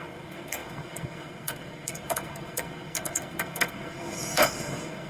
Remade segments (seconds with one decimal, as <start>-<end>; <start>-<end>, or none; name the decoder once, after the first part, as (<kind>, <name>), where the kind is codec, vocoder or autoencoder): 0.0-5.1 (codec, SNAC)